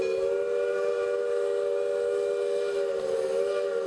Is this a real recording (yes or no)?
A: yes